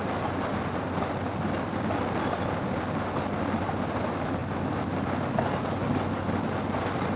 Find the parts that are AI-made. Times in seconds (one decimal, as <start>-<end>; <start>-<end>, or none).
none